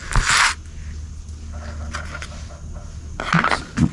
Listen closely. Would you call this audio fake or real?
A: real